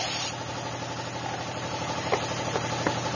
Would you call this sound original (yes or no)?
yes